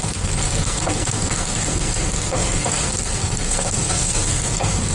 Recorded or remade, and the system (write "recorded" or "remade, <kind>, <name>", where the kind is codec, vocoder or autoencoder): remade, codec, SNAC